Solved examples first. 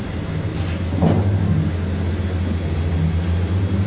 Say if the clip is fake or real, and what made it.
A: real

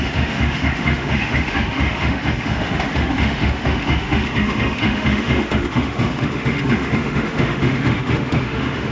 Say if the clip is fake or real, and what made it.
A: fake, autoencoder, DAC-VAE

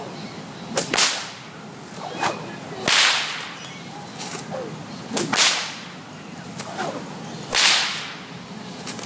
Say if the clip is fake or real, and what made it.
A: real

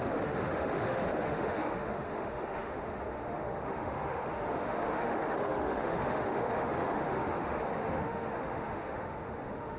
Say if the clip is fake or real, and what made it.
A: fake, autoencoder, DAC-VAE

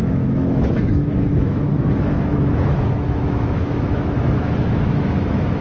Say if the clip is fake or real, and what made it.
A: fake, autoencoder, DAC-VAE